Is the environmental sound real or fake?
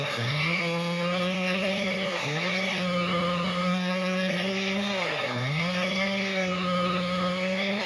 fake